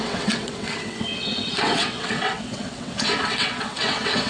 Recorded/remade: remade